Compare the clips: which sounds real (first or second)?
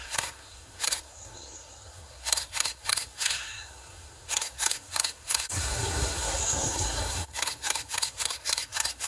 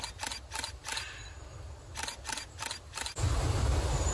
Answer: second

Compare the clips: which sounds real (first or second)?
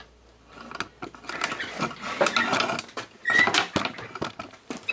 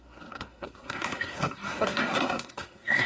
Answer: first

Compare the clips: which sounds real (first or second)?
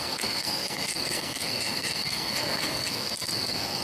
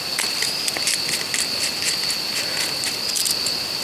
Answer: second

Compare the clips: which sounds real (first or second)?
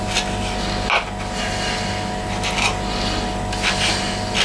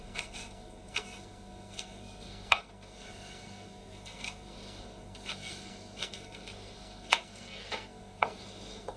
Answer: first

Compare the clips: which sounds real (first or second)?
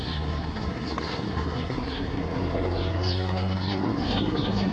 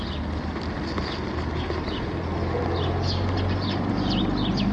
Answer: second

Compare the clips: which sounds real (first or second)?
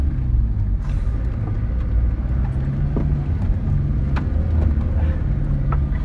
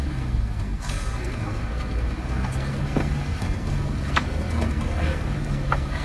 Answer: first